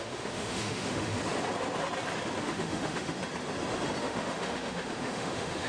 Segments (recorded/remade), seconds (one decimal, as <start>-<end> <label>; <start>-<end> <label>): 0.0-1.2 remade; 1.2-2.4 recorded; 2.4-3.2 remade; 3.2-4.0 recorded; 4.0-5.7 remade